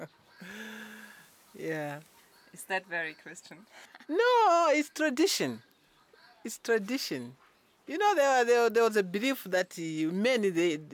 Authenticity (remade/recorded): recorded